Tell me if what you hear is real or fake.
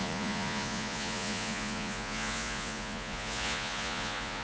fake